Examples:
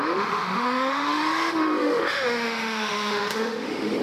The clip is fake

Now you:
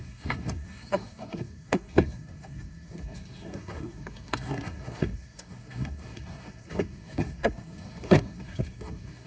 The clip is fake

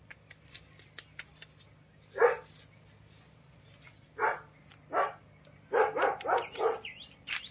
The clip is real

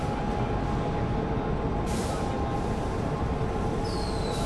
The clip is real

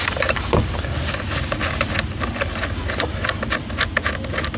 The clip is real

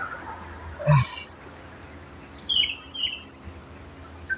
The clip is real